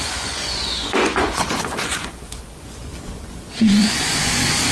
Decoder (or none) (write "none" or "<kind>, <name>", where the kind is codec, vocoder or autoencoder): vocoder, Vocos